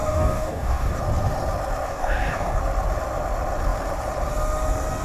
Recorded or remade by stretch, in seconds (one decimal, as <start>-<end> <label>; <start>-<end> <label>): 0.0-1.0 remade; 1.0-1.9 recorded; 1.9-2.6 remade; 2.6-5.0 recorded